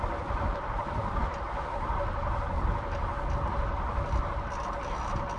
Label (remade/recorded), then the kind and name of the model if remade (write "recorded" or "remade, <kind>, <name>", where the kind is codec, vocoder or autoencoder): recorded